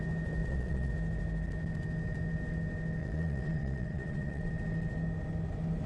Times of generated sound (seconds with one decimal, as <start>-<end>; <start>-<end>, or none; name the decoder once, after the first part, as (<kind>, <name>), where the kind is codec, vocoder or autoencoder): 0.4-0.9 (vocoder, Vocos); 3.0-4.5